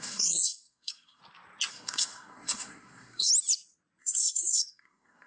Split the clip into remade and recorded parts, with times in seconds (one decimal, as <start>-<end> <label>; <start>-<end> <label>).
0.0-1.2 remade; 1.2-1.7 recorded; 1.7-3.3 remade; 3.3-4.0 recorded; 4.0-5.3 remade